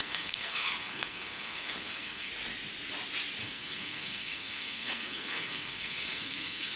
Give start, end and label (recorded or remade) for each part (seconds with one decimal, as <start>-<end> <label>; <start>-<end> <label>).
0.0-2.3 remade; 2.3-3.4 recorded; 3.4-6.8 remade